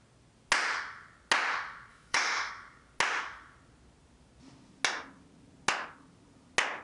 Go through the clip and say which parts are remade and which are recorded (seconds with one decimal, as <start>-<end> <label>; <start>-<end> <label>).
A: 0.0-1.9 recorded; 1.9-2.5 remade; 2.5-6.8 recorded